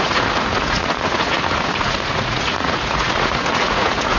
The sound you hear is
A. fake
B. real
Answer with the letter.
A